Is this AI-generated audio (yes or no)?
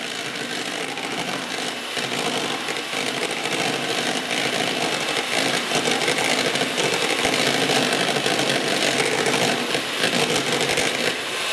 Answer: no